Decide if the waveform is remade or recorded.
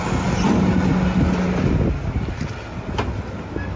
recorded